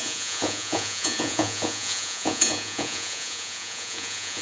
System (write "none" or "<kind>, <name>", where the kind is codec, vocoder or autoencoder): vocoder, Vocos